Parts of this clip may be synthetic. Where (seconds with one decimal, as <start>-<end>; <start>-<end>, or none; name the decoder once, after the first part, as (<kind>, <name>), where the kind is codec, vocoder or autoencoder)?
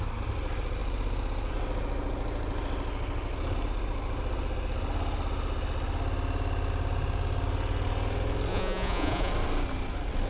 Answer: 8.5-9.3 (vocoder, Vocos)